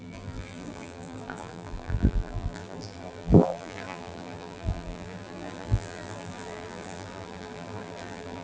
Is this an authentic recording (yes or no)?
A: no